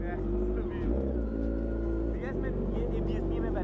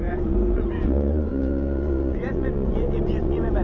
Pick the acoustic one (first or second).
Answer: first